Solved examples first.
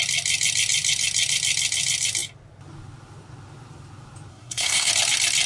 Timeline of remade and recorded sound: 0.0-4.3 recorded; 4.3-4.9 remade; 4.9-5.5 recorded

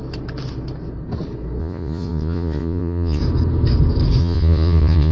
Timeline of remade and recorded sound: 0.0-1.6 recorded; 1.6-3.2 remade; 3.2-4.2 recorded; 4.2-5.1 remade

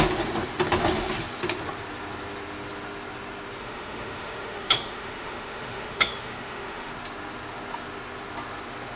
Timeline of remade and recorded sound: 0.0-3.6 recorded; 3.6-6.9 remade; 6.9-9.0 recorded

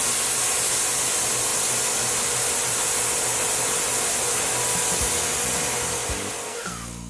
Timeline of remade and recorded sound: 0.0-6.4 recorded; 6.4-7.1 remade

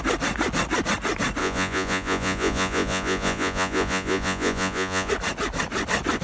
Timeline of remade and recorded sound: 0.0-1.4 recorded; 1.4-5.1 remade; 5.1-6.2 recorded